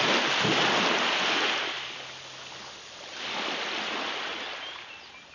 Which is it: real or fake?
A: real